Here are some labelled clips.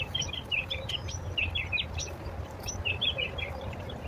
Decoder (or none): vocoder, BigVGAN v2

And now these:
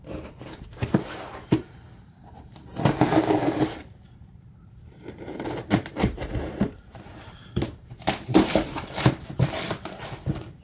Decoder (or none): vocoder, BigVGAN v2